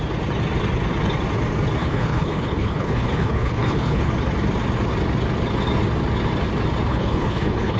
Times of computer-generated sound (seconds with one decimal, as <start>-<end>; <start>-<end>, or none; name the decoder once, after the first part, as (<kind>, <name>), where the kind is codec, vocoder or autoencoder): 1.8-4.1 (codec, HILCodec); 6.9-7.8